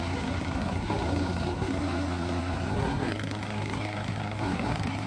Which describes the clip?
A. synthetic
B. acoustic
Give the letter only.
A